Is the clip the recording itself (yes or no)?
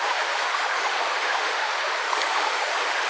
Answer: no